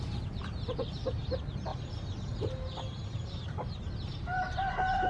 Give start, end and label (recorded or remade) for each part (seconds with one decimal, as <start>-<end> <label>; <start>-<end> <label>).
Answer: 0.0-5.1 recorded